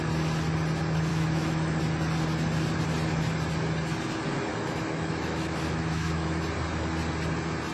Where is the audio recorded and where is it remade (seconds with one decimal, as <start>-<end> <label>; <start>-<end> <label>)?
0.0-1.1 recorded; 1.1-1.8 remade; 1.8-4.5 recorded; 4.5-6.4 remade; 6.4-7.7 recorded